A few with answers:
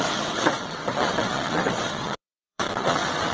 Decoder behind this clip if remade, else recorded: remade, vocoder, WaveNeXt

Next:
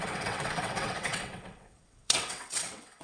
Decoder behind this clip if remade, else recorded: remade, vocoder, WaveNeXt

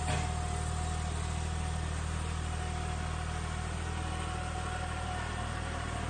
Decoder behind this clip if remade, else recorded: recorded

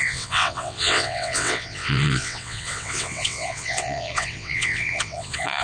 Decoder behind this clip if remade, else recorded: remade, vocoder, WaveNeXt